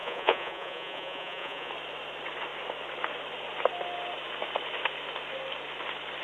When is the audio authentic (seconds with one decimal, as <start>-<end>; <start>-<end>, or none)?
1.7-6.2